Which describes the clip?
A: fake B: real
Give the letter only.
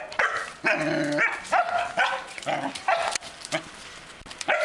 B